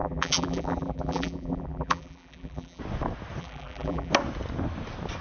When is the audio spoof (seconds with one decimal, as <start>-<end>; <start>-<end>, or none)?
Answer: 0.0-2.8; 3.4-4.1